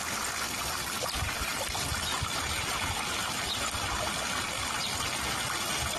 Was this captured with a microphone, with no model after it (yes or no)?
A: yes